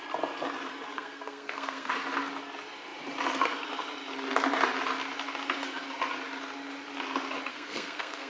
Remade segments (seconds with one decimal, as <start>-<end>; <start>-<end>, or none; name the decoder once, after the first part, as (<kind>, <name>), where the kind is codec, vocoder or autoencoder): 0.9-1.9 (codec, SNAC); 7.5-8.3